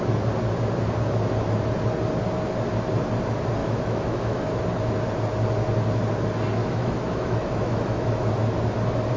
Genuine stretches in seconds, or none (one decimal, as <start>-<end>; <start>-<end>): 0.0-3.6; 4.6-6.6; 8.3-9.2